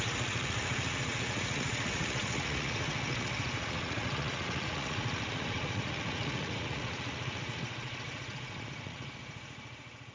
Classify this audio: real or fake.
fake